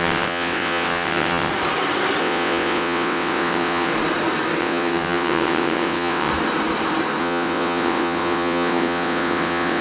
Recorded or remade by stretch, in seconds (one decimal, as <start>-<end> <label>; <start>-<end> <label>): 0.0-1.5 remade; 1.5-2.2 recorded; 2.2-3.9 remade; 3.9-4.6 recorded; 4.6-6.3 remade; 6.3-7.2 recorded; 7.2-9.8 remade